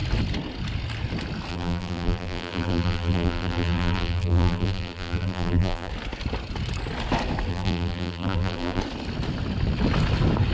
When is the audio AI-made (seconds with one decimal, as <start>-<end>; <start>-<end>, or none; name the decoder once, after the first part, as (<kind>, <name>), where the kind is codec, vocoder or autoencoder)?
1.5-5.9 (vocoder, BigVGAN v2); 7.5-8.8